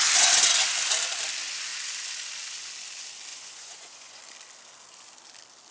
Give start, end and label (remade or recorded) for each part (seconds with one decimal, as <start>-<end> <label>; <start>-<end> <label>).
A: 0.0-3.3 recorded; 3.3-4.2 remade; 4.2-5.7 recorded